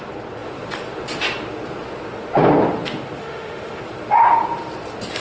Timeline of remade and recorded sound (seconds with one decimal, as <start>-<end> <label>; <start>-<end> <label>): 0.0-3.2 recorded; 3.2-3.8 remade; 3.8-5.2 recorded